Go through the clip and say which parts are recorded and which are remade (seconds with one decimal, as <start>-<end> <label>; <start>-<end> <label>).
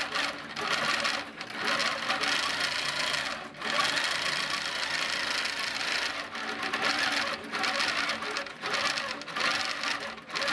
0.0-10.5 recorded